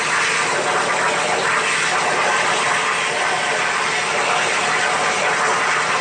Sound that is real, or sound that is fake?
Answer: real